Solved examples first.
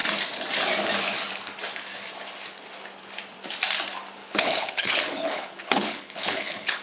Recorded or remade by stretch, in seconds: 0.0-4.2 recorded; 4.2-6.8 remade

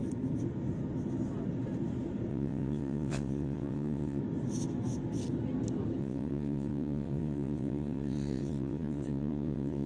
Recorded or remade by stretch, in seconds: 0.0-2.3 recorded; 2.3-4.2 remade; 4.2-6.0 recorded; 6.0-9.9 remade

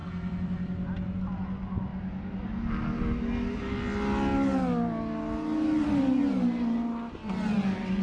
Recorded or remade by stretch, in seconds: 0.0-8.0 recorded

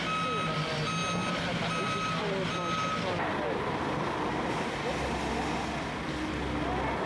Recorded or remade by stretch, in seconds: 0.0-7.1 recorded